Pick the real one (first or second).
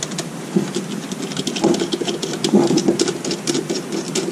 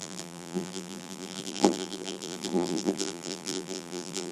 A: first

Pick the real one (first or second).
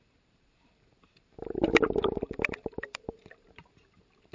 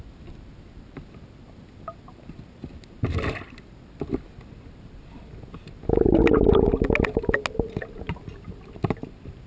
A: second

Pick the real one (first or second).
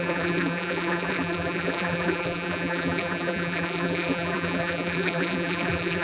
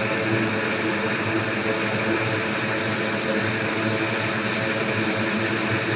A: second